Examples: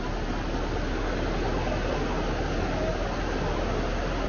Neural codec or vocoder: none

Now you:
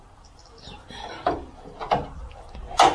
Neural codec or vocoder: vocoder, BigVGAN v2